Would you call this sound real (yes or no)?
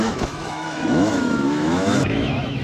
no